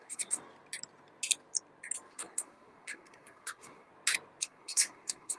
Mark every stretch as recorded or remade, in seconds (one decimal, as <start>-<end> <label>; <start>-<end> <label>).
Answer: 0.0-0.4 remade; 0.4-2.1 recorded; 2.1-3.9 remade; 3.9-4.4 recorded; 4.4-5.4 remade